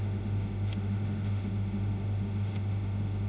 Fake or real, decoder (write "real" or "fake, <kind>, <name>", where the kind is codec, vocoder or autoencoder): fake, autoencoder, DAC-VAE